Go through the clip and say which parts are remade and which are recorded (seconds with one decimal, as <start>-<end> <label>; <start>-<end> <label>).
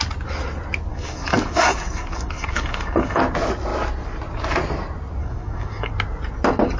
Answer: 0.0-0.9 recorded; 0.9-3.2 remade; 3.2-5.2 recorded; 5.2-5.9 remade; 5.9-6.8 recorded